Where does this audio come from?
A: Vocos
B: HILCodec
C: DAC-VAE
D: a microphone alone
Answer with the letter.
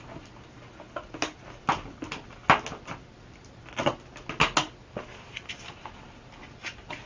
D